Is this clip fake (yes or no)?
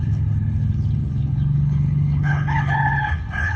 yes